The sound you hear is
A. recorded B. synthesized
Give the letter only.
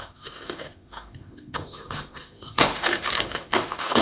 B